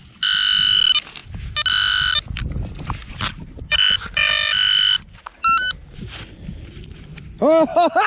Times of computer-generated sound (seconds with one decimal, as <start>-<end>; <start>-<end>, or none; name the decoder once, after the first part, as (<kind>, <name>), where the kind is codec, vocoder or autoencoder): none